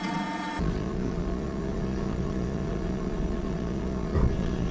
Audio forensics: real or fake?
fake